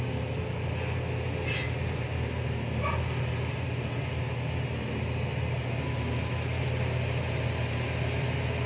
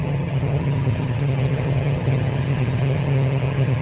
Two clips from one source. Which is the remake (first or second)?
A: second